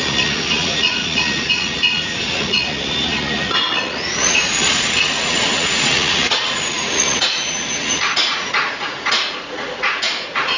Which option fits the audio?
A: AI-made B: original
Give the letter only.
A